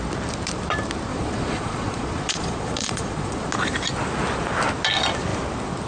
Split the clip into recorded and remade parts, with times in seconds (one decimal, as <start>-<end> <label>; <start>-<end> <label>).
0.0-1.1 recorded; 1.1-3.5 remade; 3.5-5.9 recorded